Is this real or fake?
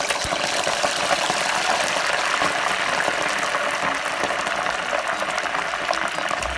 real